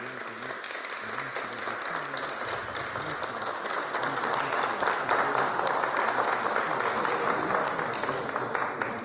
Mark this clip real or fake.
real